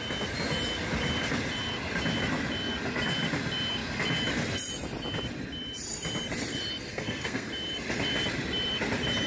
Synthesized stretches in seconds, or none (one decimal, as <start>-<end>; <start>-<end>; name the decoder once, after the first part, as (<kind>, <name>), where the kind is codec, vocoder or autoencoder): 6.9-7.5 (codec, SNAC)